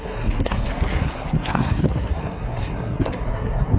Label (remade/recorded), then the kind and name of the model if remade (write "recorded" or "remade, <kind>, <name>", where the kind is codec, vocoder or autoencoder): remade, codec, SNAC